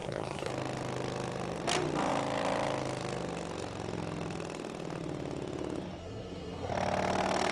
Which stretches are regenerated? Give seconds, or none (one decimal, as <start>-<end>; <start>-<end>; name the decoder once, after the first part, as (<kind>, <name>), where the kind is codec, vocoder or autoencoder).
0.0-0.5 (codec, SNAC); 6.0-6.7